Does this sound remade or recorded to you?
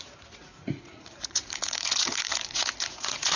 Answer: remade